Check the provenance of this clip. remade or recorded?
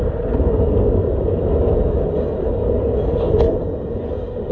recorded